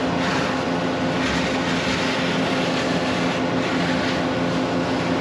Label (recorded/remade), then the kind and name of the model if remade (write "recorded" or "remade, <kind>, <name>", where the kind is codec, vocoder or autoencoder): recorded